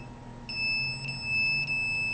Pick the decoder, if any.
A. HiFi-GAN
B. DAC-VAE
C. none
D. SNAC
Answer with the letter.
C